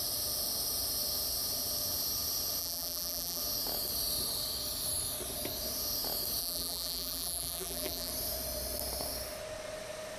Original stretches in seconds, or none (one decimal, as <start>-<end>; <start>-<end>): 0.0-2.6; 3.4-6.4; 8.1-10.2